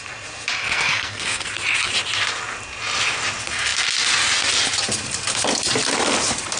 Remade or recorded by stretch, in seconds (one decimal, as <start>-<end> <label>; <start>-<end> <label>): 0.0-0.6 recorded; 0.6-1.5 remade; 1.5-6.6 recorded